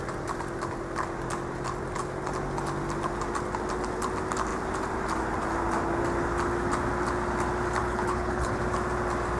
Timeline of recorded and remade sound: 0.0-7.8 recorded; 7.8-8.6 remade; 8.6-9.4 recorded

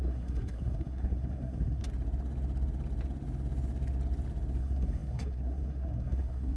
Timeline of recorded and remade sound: 0.0-1.8 remade; 1.8-4.6 recorded; 4.6-6.6 remade

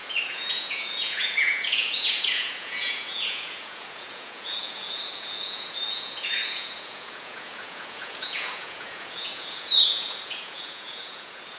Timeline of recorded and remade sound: 0.0-11.6 remade

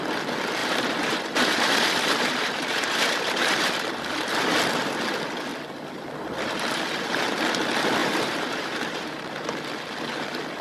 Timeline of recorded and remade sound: 0.0-0.6 recorded; 0.6-4.0 remade; 4.0-8.0 recorded; 8.0-9.5 remade; 9.5-10.6 recorded

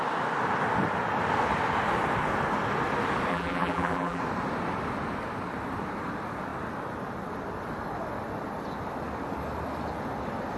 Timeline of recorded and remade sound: 0.0-3.3 recorded; 3.3-4.2 remade; 4.2-10.6 recorded

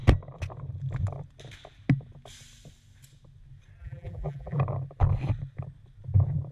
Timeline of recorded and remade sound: 0.0-3.8 recorded; 3.8-4.6 remade; 4.6-6.5 recorded